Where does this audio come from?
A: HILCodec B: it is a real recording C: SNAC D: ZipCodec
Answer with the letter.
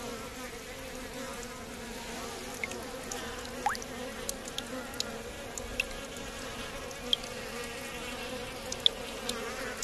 B